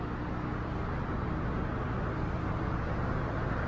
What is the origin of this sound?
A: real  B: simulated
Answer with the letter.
A